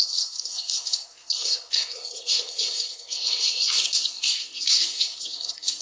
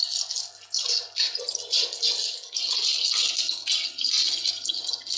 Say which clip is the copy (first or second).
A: first